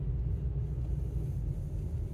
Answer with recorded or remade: recorded